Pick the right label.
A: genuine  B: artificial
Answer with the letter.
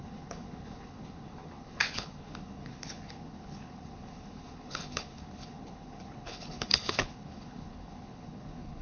B